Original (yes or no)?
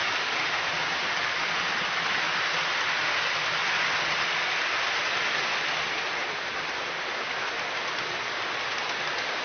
yes